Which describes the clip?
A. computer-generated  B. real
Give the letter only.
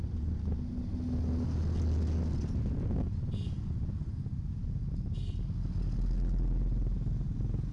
B